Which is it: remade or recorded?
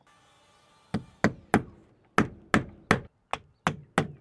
recorded